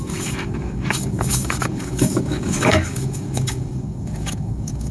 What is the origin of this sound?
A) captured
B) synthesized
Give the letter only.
B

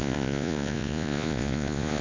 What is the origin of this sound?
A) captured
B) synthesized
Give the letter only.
B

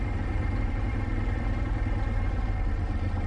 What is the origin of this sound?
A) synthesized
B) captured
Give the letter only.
A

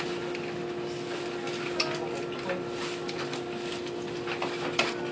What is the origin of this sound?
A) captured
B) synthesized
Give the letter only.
A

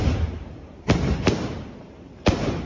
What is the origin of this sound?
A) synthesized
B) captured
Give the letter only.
B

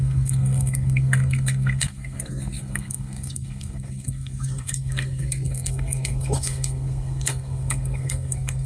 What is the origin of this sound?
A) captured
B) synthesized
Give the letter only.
B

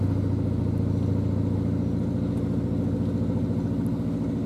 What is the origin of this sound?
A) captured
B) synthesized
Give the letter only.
A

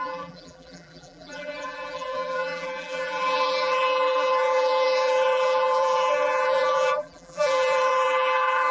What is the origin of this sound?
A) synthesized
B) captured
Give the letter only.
A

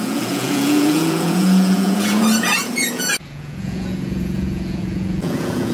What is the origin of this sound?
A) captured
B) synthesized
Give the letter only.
B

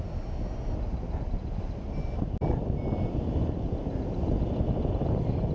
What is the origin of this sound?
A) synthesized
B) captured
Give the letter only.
B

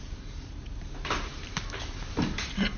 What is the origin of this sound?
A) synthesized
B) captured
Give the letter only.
A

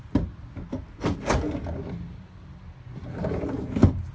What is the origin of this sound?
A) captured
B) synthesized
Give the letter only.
A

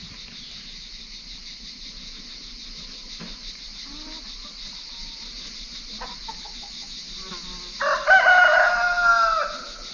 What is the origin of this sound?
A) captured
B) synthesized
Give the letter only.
A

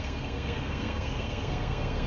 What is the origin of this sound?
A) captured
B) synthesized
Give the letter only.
B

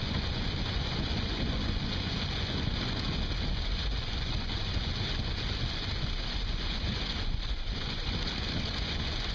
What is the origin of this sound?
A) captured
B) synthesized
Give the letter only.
B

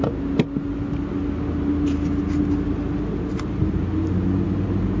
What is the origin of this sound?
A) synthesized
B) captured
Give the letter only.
B